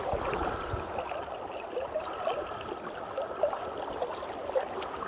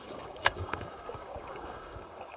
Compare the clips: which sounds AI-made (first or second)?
second